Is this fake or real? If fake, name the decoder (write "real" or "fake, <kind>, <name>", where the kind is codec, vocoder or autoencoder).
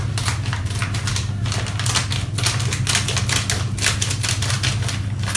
real